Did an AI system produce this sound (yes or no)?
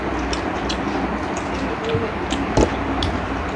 no